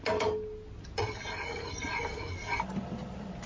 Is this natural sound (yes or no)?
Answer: yes